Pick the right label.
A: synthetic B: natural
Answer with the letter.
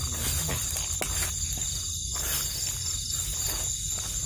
B